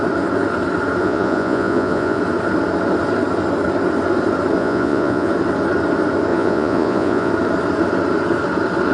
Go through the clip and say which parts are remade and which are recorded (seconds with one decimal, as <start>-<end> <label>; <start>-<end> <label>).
0.0-1.0 recorded; 1.0-2.2 remade; 2.2-4.6 recorded; 4.6-5.3 remade; 5.3-6.3 recorded; 6.3-7.3 remade; 7.3-8.9 recorded